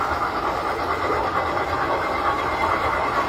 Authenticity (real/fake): real